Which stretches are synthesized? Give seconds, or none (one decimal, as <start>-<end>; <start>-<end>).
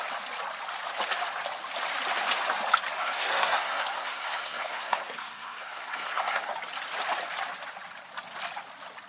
3.0-6.5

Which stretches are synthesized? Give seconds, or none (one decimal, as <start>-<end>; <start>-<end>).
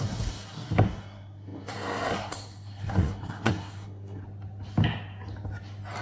0.0-4.2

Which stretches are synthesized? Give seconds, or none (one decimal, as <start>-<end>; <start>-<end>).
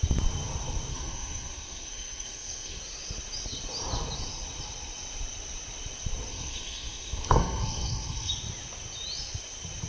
0.9-2.8; 6.3-8.3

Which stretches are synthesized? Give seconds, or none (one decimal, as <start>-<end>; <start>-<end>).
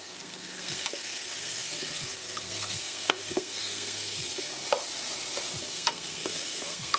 0.0-4.5; 5.6-7.0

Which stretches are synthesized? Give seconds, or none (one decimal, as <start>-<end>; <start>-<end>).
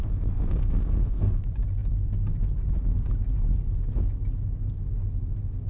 0.0-1.4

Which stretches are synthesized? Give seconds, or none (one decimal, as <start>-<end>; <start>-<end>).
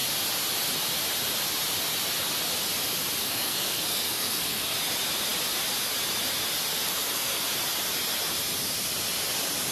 3.2-4.7; 6.7-7.4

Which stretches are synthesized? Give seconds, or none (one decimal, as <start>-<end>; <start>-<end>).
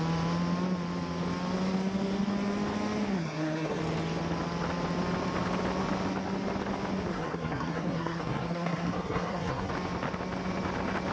3.1-3.8; 7.1-9.7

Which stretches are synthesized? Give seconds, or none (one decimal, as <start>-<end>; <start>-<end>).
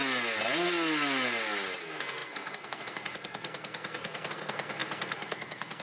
1.8-5.8